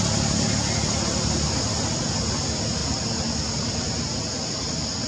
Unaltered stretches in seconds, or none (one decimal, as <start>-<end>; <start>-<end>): 0.0-5.1